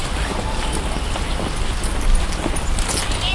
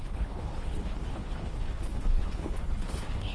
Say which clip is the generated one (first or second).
second